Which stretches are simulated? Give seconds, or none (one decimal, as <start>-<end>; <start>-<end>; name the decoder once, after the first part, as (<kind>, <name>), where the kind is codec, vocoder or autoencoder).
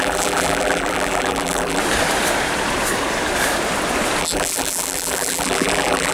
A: 0.0-1.8 (vocoder, BigVGAN v2); 4.2-6.1